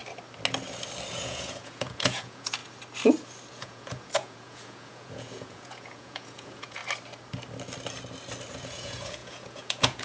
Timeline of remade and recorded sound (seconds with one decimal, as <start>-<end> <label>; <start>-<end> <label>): 0.0-1.1 recorded; 1.1-2.6 remade; 2.6-3.5 recorded; 3.5-6.8 remade; 6.8-8.5 recorded; 8.5-10.0 remade